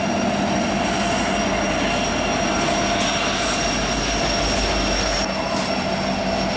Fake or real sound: real